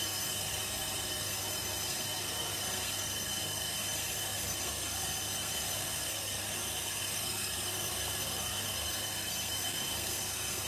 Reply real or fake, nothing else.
fake